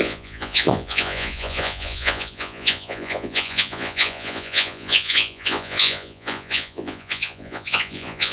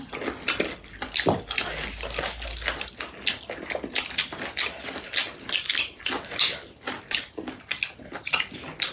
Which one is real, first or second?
second